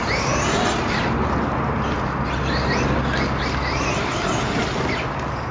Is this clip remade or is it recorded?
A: recorded